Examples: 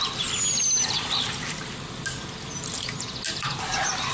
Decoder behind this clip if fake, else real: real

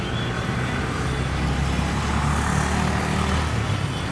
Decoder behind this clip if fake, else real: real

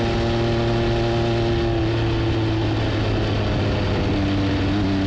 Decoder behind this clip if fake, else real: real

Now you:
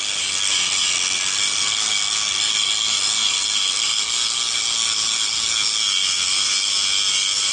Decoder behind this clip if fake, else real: real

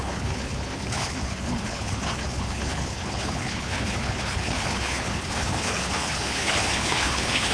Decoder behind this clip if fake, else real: fake, codec, HILCodec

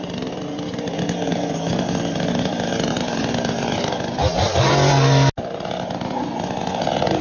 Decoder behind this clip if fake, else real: real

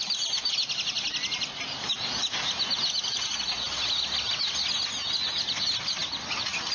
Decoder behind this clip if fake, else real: real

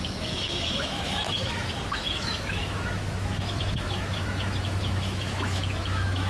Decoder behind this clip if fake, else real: fake, autoencoder, DAC-VAE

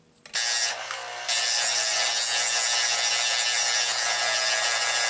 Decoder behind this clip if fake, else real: real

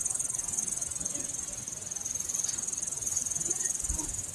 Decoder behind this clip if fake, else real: real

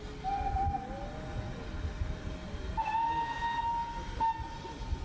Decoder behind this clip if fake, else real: real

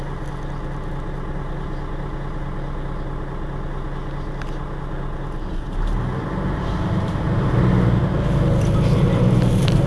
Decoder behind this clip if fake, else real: real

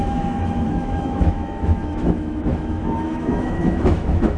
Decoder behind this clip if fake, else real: fake, autoencoder, DAC-VAE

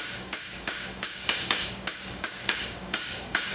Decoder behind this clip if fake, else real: fake, codec, DAC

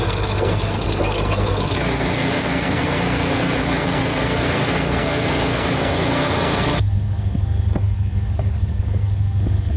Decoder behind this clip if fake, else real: fake, codec, SNAC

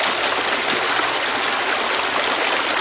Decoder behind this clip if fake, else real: real